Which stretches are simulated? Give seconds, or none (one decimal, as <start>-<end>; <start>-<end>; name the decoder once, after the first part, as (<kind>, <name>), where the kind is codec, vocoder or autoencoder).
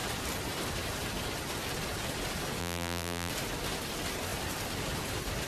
2.6-3.3 (vocoder, BigVGAN v2)